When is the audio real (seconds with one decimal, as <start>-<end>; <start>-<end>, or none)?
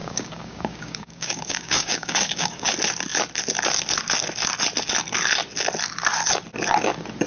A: 2.7-7.3